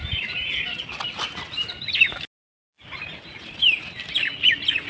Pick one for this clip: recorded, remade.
recorded